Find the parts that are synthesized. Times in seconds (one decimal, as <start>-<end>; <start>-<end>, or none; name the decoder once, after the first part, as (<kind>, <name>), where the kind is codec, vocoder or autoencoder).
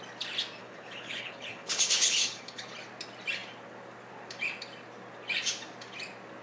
0.6-2.7 (codec, HILCodec)